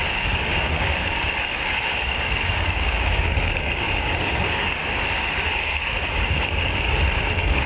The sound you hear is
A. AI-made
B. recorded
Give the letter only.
A